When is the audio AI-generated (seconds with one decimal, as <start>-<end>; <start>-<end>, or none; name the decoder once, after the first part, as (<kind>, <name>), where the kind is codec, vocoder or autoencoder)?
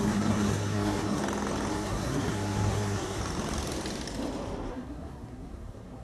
0.0-1.2 (codec, SNAC); 1.7-3.2; 4.7-6.0